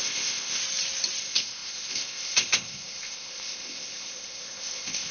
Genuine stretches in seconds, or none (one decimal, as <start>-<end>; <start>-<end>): 0.6-1.2